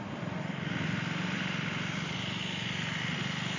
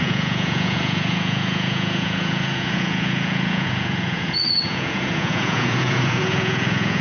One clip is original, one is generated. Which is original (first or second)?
first